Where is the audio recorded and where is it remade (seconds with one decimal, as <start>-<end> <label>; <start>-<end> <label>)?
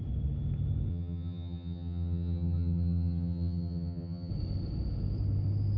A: 0.0-0.9 recorded; 0.9-4.3 remade; 4.3-5.8 recorded